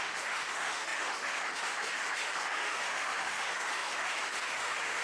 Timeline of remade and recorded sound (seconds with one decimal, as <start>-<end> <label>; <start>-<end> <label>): 0.0-5.0 remade